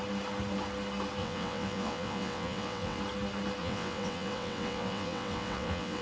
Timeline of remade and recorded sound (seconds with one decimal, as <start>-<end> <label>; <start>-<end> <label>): 0.0-1.2 recorded; 1.2-3.0 remade; 3.0-3.6 recorded; 3.6-6.0 remade